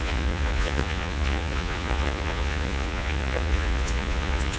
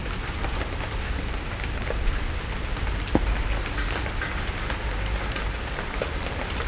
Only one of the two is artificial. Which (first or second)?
first